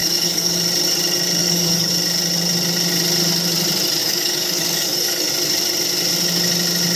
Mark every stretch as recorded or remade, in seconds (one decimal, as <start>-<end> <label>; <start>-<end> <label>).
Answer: 0.0-0.6 remade; 0.6-1.4 recorded; 1.4-1.9 remade; 1.9-4.0 recorded; 4.0-5.3 remade; 5.3-7.0 recorded